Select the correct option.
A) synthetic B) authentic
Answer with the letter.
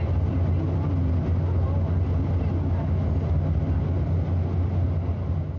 B